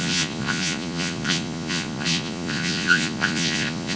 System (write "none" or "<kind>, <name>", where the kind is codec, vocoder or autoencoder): vocoder, Vocos